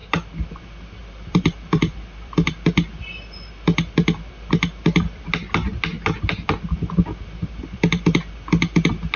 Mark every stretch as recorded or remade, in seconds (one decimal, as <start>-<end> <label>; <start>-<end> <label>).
0.0-0.6 remade; 0.6-1.0 recorded; 1.0-2.5 remade; 2.5-7.4 recorded; 7.4-8.0 remade; 8.0-9.2 recorded